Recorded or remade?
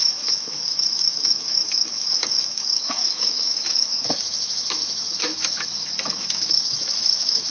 remade